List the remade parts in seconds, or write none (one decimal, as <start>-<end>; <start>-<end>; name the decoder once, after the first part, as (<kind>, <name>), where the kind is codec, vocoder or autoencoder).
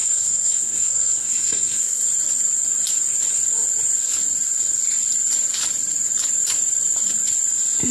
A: 0.0-2.0 (codec, SNAC)